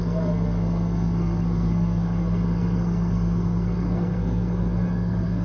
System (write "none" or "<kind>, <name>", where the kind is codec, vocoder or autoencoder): codec, SNAC